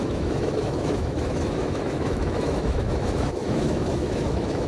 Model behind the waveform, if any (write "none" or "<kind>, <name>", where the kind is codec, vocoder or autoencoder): autoencoder, DAC-VAE